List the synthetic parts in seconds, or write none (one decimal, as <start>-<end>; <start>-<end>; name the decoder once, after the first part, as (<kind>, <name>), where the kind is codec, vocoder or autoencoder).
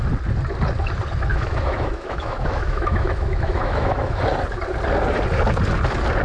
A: 1.3-4.2 (autoencoder, DAC-VAE)